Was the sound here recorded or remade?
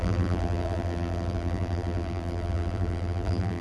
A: remade